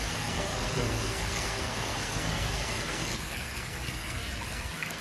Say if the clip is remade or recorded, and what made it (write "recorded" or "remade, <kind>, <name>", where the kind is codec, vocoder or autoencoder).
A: remade, codec, SNAC